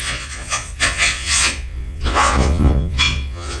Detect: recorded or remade remade